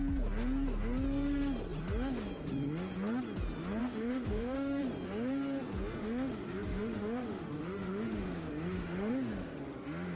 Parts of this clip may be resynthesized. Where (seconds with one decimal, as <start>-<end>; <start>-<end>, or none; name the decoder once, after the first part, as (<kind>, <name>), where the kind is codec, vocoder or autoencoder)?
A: 3.8-4.8 (autoencoder, DAC-VAE); 6.0-9.1